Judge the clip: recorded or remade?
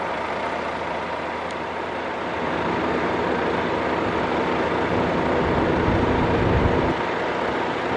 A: recorded